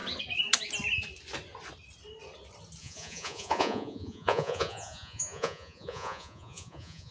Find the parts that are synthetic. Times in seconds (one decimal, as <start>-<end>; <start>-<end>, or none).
2.8-7.1